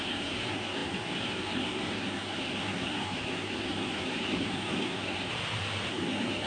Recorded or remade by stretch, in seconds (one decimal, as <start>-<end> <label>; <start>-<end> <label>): 0.0-5.3 remade; 5.3-5.9 recorded; 5.9-6.5 remade